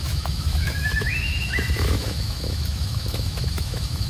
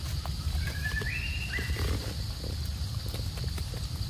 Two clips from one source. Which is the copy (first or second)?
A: first